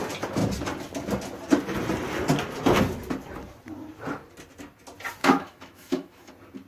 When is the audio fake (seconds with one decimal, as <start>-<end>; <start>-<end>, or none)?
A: 5.2-6.3